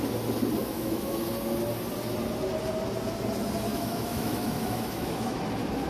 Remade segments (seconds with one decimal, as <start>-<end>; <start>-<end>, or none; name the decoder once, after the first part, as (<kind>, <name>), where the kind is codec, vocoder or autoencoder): 0.6-1.3 (autoencoder, DAC-VAE); 3.7-5.4